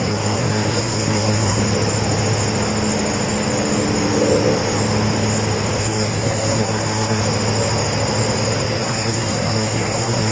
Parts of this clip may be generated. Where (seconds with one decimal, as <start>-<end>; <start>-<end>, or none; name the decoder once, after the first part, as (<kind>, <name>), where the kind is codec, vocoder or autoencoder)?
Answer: 0.0-1.6 (codec, SNAC); 5.8-7.2; 8.8-10.3